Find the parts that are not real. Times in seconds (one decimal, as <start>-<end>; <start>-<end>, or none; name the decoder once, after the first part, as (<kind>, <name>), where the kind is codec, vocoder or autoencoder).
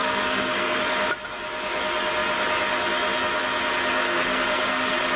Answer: 0.0-0.8 (codec, SNAC); 4.0-5.2